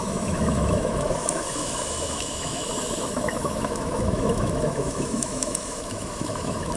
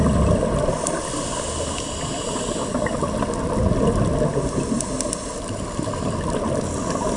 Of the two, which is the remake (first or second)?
first